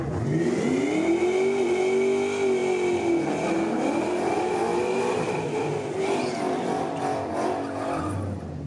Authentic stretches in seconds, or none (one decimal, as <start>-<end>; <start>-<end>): 0.0-8.7